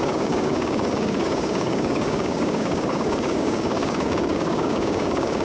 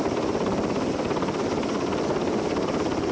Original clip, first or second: second